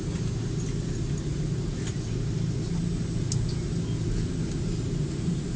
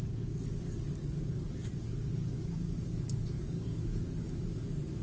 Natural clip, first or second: first